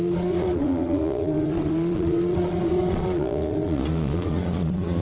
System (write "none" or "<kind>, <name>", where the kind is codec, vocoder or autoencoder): vocoder, Vocos